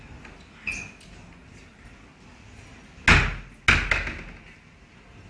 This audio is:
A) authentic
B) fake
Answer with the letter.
A